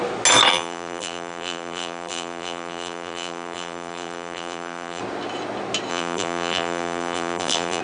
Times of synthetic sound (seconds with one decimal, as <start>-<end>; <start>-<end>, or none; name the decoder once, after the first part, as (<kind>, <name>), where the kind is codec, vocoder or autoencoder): 0.5-5.0 (vocoder, BigVGAN v2); 5.9-7.8